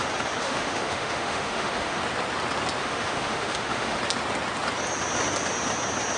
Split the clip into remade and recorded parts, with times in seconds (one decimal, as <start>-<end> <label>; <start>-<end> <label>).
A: 0.0-0.4 recorded; 0.4-2.0 remade; 2.0-2.8 recorded; 2.8-4.0 remade; 4.0-6.2 recorded